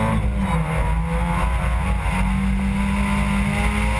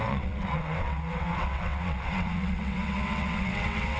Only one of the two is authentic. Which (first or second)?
first